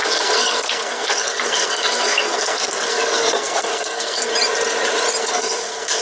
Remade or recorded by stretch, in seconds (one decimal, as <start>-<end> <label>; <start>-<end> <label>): 0.0-4.3 remade; 4.3-5.2 recorded; 5.2-6.0 remade